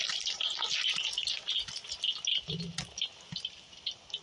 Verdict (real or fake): real